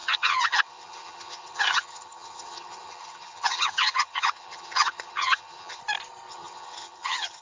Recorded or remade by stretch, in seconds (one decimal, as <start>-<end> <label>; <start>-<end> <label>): 0.0-5.8 remade; 5.8-6.3 recorded; 6.3-7.4 remade